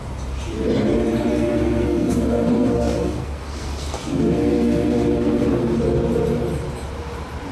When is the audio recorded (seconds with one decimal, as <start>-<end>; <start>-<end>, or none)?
0.0-1.3; 5.8-7.5